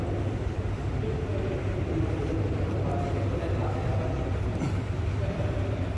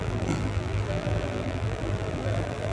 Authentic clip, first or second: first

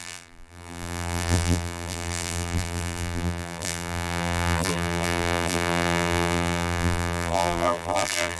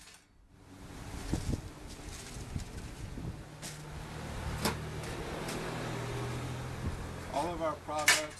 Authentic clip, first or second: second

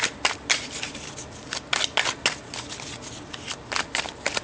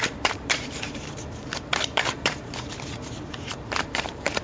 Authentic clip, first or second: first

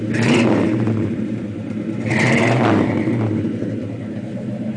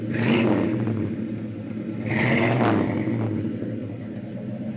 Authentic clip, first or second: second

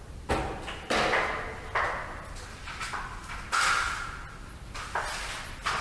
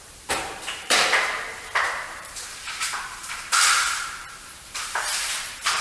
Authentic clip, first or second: first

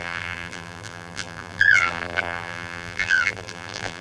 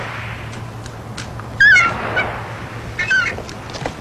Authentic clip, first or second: second